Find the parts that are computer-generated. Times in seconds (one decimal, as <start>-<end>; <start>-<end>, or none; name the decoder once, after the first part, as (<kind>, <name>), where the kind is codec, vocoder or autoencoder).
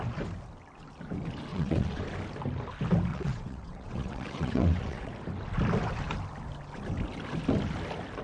1.5-2.0 (vocoder, WaveNeXt); 3.1-5.1